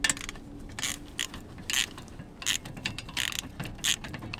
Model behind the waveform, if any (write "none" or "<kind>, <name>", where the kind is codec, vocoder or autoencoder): none